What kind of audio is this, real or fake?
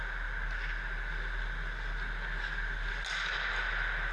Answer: real